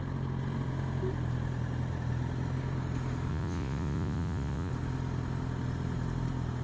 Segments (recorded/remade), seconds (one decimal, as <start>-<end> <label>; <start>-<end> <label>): 0.0-3.3 recorded; 3.3-4.7 remade; 4.7-6.6 recorded